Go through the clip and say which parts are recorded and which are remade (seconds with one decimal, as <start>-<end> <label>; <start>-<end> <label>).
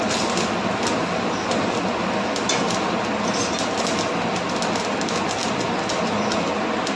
0.0-7.0 recorded